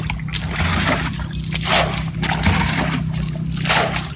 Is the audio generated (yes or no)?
no